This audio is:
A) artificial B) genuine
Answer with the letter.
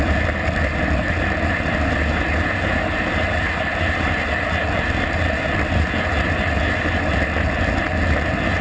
B